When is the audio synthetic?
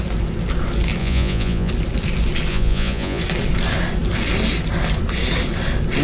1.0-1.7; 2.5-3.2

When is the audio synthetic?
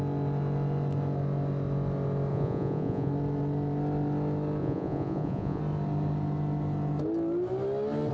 2.3-3.1; 4.6-5.6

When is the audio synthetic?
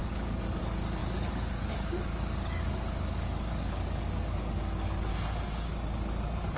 0.0-5.1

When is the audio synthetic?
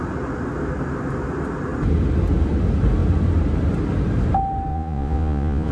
4.7-5.7